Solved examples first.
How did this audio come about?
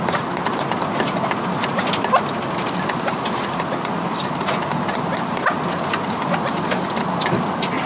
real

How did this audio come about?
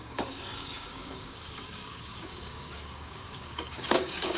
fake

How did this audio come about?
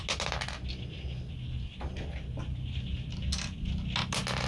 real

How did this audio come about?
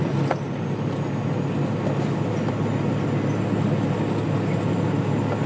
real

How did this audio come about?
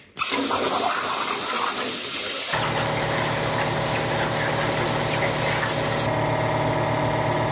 real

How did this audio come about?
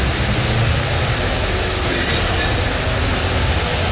real